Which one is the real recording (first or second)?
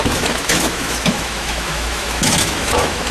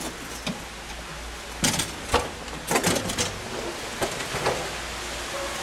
second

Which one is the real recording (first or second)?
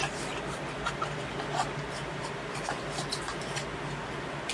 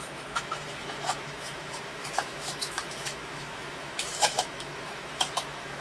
first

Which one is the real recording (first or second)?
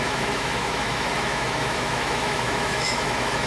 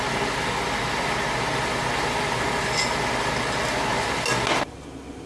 second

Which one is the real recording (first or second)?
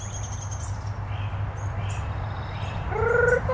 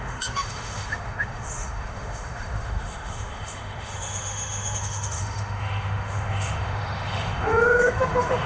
first